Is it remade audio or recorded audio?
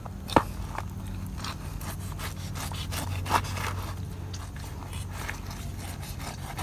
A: recorded